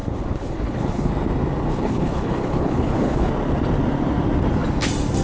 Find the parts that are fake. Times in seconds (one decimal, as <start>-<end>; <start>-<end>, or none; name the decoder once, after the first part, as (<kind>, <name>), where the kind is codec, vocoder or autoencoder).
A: 0.0-1.1 (codec, HILCodec); 1.7-3.3